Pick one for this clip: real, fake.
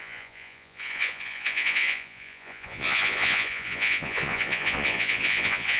fake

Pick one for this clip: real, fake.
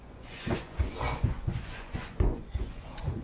fake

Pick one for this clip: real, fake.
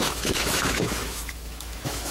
fake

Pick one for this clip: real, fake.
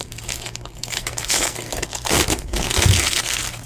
fake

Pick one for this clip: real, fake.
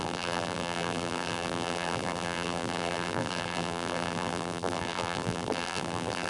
fake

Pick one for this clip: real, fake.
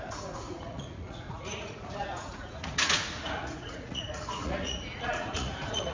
fake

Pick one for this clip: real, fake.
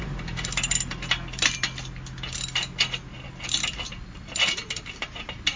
real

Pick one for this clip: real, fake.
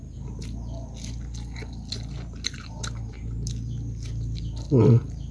real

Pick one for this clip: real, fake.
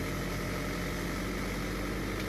real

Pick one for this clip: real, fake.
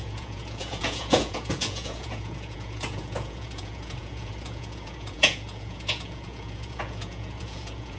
fake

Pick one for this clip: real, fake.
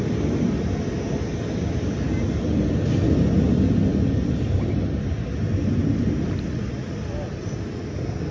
real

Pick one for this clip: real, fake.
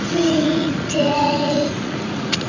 fake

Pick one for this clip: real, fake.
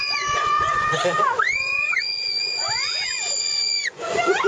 fake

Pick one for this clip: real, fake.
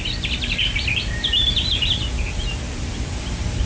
fake